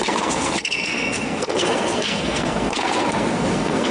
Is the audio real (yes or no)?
no